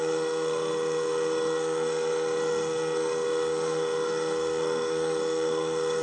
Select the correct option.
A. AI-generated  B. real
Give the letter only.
A